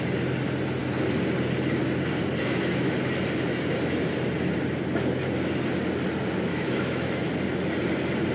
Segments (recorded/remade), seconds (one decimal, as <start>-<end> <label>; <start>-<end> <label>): 0.0-6.5 recorded; 6.5-7.3 remade; 7.3-8.3 recorded